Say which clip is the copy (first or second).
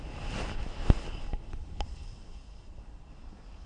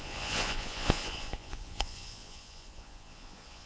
second